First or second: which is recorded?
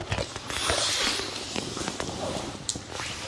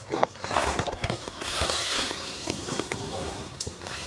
first